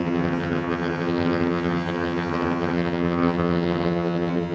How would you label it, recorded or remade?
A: remade